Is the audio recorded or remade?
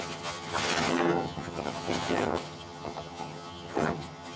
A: remade